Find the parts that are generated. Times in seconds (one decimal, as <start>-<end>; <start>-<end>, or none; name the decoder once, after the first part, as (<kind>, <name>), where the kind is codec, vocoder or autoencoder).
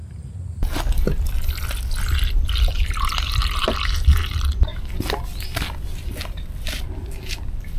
2.5-4.7 (vocoder, BigVGAN v2); 7.0-7.8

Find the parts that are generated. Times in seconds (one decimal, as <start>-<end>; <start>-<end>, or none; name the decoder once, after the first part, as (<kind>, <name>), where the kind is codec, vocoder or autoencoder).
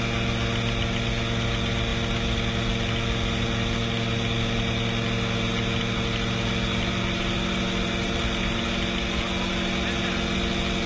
none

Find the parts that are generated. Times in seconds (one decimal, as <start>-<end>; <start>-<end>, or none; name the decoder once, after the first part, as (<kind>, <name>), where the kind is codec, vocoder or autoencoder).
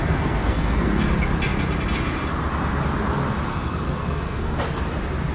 0.0-1.0 (codec, SNAC); 3.5-4.8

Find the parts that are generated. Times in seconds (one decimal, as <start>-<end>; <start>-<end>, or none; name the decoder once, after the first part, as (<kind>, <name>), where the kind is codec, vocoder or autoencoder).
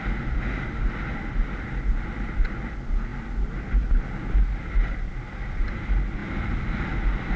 none